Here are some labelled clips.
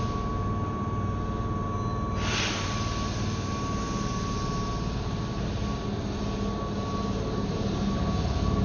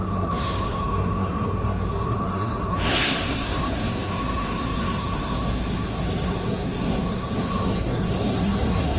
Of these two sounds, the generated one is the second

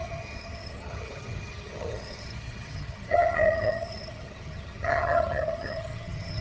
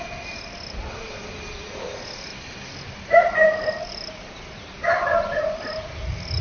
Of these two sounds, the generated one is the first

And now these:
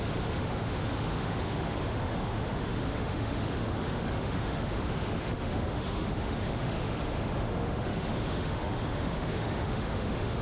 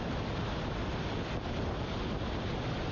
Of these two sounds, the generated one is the first